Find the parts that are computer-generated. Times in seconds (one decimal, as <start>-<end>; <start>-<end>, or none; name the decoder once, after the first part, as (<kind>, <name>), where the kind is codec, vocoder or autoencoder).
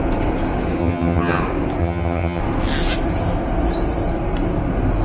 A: 0.8-1.4 (vocoder, HiFi-GAN); 1.8-2.4